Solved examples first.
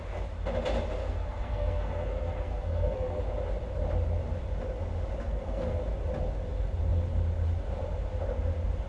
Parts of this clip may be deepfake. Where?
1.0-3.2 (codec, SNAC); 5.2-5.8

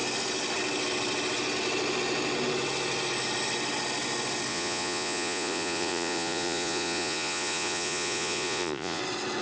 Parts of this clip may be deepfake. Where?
4.5-9.0 (vocoder, Vocos)

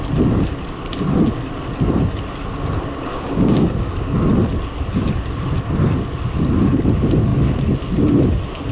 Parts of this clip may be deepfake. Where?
3.1-4.3 (codec, DAC)